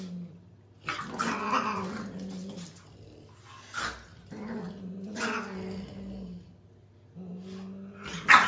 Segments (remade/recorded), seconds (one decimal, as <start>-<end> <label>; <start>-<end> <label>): 0.0-8.5 recorded